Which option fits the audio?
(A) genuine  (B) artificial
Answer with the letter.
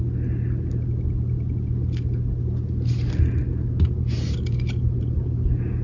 A